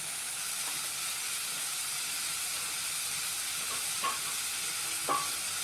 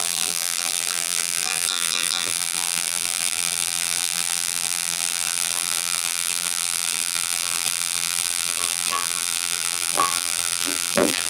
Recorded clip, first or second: first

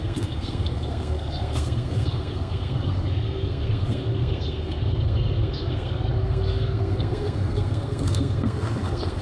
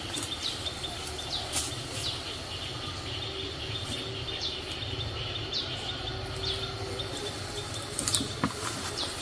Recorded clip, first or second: second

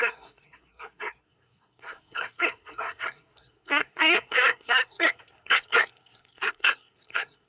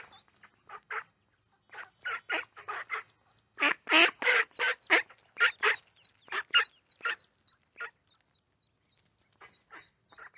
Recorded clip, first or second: second